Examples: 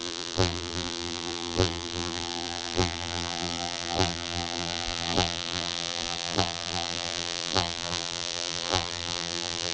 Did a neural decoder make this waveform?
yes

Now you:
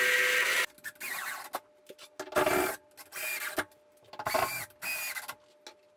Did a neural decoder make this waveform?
no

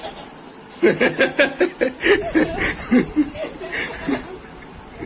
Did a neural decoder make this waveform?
no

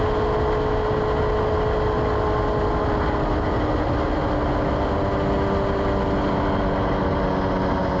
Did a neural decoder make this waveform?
no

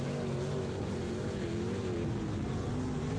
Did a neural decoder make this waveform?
no